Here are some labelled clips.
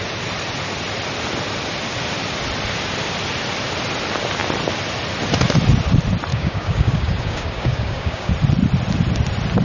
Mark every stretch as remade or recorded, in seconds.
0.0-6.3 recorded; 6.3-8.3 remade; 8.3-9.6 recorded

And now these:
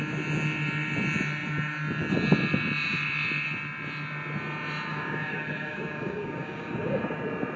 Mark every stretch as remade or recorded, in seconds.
0.0-4.9 recorded; 4.9-6.9 remade; 6.9-7.6 recorded